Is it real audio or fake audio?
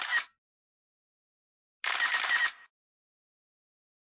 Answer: real